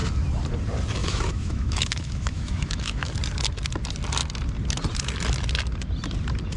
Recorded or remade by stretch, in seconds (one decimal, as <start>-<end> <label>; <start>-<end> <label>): 0.0-1.0 recorded; 1.0-3.1 remade; 3.1-6.6 recorded